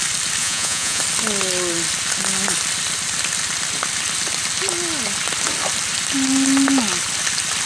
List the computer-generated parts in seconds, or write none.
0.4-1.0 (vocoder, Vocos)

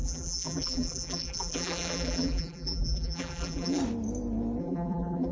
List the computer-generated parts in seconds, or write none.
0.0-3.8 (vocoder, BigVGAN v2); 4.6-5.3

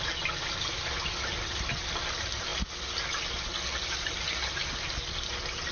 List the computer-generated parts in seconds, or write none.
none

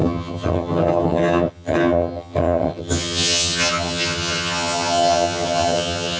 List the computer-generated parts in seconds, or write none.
0.0-6.2 (vocoder, HiFi-GAN)

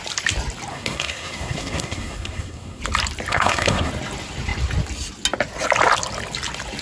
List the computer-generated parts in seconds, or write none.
0.7-2.8 (codec, SNAC); 3.3-3.9